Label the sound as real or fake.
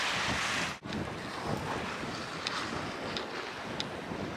real